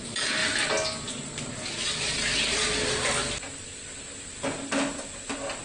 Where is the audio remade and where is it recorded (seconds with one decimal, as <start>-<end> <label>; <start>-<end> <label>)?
0.0-5.6 recorded